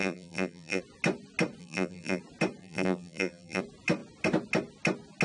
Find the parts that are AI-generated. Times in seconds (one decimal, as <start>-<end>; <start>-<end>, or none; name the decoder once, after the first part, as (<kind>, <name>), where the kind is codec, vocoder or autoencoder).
0.0-0.8 (vocoder, BigVGAN v2); 1.6-2.2; 2.6-3.6